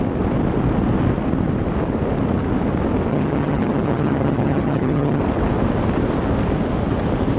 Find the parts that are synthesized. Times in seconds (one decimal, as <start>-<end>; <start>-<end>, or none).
3.1-5.2